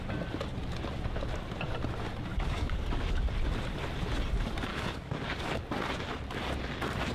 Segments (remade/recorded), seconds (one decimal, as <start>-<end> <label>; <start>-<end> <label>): 0.0-2.3 recorded; 2.3-3.0 remade; 3.0-4.7 recorded; 4.7-5.6 remade; 5.6-7.1 recorded

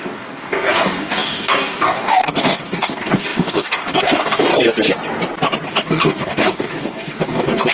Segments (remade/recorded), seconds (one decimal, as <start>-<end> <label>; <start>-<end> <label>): 0.0-4.5 remade; 4.5-5.7 recorded; 5.7-7.7 remade

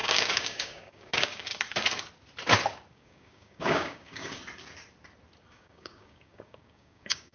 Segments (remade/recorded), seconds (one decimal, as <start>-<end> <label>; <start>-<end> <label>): 0.0-1.5 remade; 1.5-2.9 recorded; 2.9-4.4 remade; 4.4-5.5 recorded; 5.5-7.3 remade

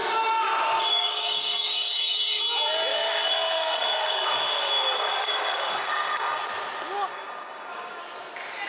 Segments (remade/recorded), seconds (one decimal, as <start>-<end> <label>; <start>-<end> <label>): 0.0-0.9 recorded; 0.9-2.4 remade; 2.4-2.9 recorded; 2.9-6.4 remade; 6.4-7.1 recorded; 7.1-8.0 remade; 8.0-8.7 recorded

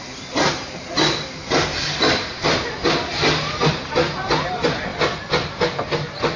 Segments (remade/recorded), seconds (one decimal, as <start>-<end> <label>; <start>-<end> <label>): 0.0-6.4 recorded